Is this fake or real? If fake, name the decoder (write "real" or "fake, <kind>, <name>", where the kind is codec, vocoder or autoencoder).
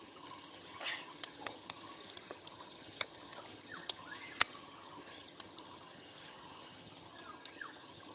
fake, vocoder, HiFi-GAN